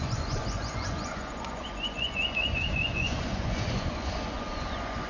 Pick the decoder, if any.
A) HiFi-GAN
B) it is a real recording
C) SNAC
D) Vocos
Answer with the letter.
D